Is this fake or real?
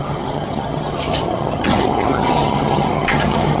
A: fake